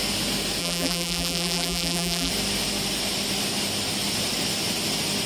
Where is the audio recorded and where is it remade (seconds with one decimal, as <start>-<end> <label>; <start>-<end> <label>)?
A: 0.0-0.6 recorded; 0.6-2.3 remade; 2.3-5.3 recorded